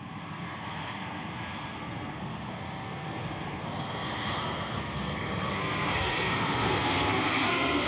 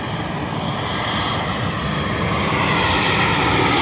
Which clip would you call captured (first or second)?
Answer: second